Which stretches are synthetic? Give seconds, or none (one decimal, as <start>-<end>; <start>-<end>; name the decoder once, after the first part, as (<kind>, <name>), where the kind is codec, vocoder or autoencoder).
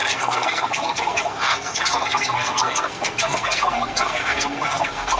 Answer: 0.0-5.2 (codec, SNAC)